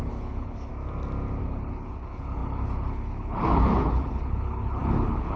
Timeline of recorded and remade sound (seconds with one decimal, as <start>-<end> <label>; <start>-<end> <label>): 0.0-0.7 remade; 0.7-1.4 recorded; 1.4-5.4 remade